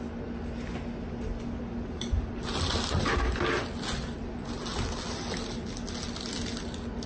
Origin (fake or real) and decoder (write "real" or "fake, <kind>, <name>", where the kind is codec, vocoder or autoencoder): real